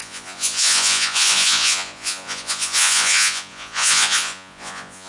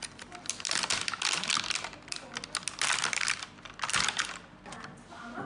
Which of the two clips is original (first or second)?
second